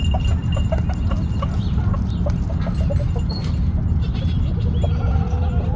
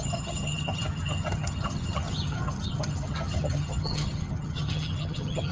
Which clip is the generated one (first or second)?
second